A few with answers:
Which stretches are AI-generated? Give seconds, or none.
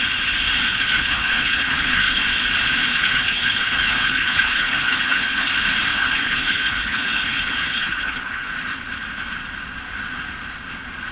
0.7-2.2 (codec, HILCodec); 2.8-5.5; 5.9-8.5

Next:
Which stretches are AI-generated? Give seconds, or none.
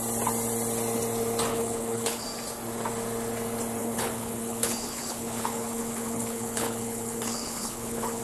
1.5-2.2 (codec, HILCodec); 3.8-8.2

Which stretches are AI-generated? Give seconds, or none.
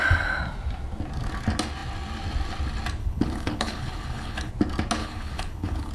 3.0-4.5 (codec, HILCodec); 5.0-5.9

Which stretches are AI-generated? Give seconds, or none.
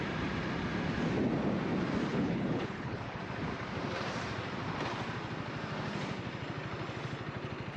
2.1-3.2 (codec, HILCodec)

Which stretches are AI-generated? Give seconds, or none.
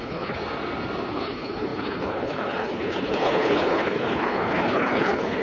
0.0-0.4 (codec, HILCodec); 1.1-5.4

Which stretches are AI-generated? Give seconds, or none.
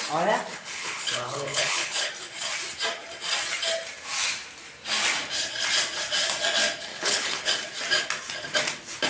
0.5-2.1 (codec, HILCodec); 6.9-7.5